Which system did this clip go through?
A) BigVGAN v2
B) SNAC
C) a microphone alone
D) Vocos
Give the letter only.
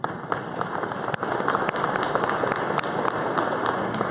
C